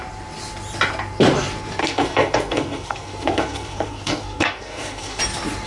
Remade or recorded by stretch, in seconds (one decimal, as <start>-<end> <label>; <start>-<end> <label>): 0.0-1.8 recorded; 1.8-5.2 remade; 5.2-5.7 recorded